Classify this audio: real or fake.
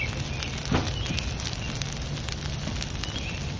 real